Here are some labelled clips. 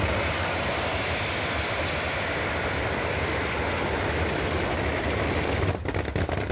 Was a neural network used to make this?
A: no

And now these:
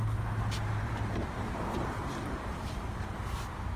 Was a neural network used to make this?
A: no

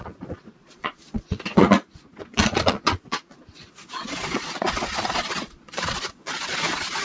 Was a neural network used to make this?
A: yes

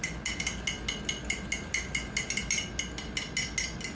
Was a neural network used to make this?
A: no